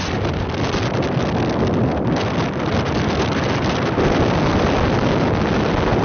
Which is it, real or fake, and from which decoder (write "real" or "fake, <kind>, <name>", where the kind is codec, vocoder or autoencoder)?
real